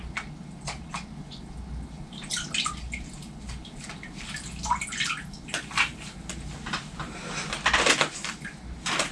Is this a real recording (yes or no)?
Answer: yes